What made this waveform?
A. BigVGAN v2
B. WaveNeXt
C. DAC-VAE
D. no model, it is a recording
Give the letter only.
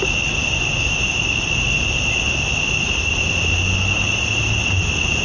D